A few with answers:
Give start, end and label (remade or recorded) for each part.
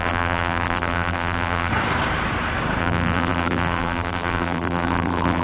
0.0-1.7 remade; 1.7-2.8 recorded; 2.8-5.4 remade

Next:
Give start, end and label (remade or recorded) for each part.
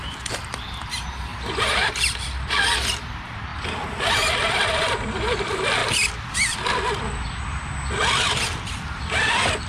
0.0-9.7 recorded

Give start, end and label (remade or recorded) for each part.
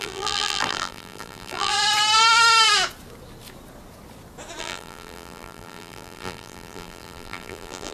0.0-1.7 remade; 1.7-4.6 recorded; 4.6-7.9 remade